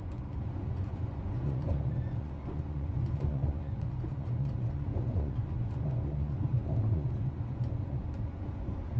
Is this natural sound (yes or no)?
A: no